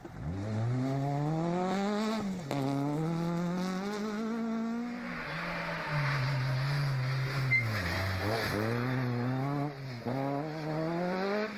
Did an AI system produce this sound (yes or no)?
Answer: no